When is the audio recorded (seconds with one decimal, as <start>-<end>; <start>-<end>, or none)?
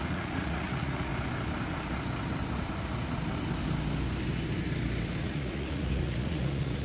1.1-5.2